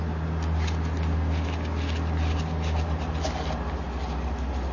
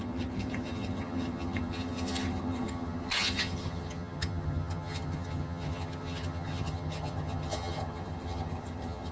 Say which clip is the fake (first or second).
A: second